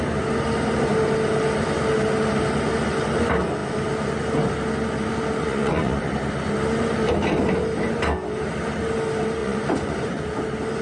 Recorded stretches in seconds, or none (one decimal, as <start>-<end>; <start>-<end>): 0.0-5.4; 6.1-9.4; 10.2-10.8